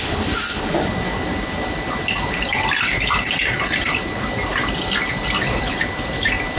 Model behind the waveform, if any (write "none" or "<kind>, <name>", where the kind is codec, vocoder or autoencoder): none